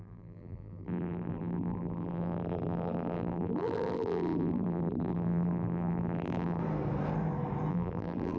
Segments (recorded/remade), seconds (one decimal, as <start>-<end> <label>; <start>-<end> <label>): 0.0-6.6 remade; 6.6-7.7 recorded; 7.7-8.4 remade